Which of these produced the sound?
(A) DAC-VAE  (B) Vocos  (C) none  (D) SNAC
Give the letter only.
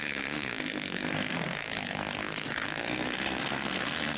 D